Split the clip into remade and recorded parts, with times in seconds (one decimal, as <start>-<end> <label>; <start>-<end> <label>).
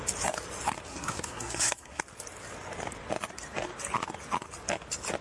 0.0-0.9 recorded; 0.9-2.0 remade; 2.0-5.2 recorded